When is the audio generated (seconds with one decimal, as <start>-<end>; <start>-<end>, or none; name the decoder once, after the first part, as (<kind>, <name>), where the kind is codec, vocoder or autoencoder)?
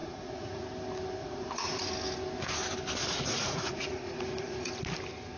0.0-0.6 (vocoder, Vocos); 1.2-1.8; 3.0-4.7